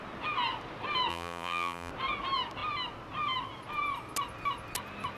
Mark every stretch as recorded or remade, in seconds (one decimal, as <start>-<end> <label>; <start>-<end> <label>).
0.0-1.1 recorded; 1.1-1.9 remade; 1.9-5.2 recorded